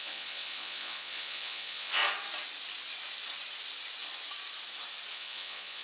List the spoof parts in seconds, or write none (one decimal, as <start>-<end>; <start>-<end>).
0.0-2.0; 5.1-5.8